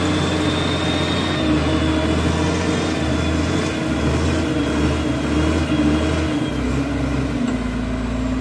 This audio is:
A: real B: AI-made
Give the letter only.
A